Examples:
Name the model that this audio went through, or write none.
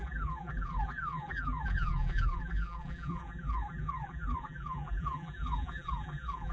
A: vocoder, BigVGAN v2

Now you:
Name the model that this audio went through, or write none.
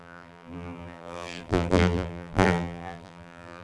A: vocoder, BigVGAN v2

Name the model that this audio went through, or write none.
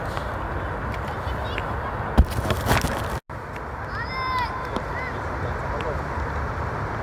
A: none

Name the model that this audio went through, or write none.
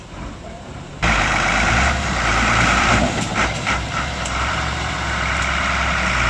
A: vocoder, BigVGAN v2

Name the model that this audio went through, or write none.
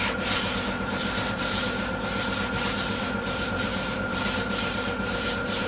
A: vocoder, BigVGAN v2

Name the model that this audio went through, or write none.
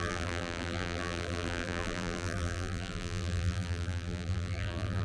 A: vocoder, BigVGAN v2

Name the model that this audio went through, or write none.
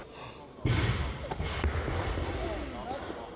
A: none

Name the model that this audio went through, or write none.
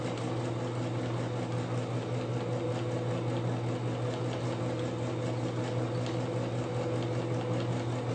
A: none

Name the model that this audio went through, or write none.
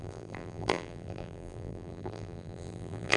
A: vocoder, BigVGAN v2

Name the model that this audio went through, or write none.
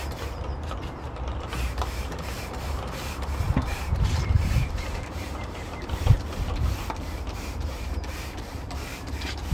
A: vocoder, BigVGAN v2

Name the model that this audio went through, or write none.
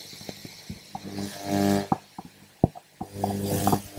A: none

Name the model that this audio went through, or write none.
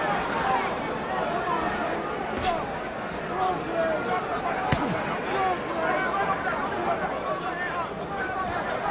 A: none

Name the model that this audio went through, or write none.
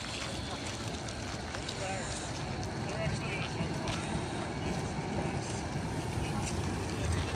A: none